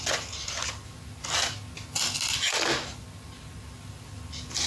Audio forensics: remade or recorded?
recorded